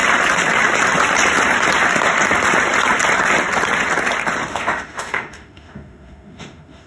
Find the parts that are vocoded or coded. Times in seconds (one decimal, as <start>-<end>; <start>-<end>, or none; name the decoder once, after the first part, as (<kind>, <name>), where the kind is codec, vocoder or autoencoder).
4.5-6.9 (autoencoder, DAC-VAE)